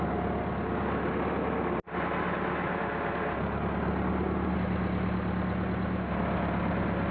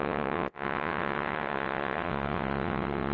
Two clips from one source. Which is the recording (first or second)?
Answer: first